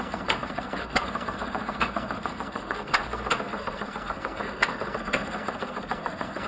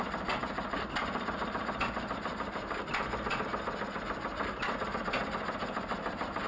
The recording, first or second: second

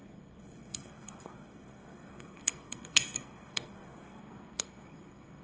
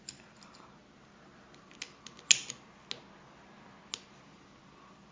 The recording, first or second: second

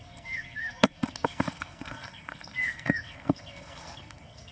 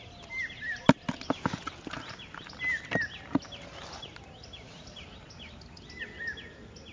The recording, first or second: second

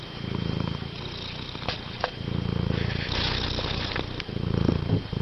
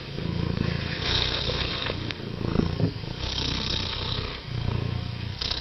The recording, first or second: first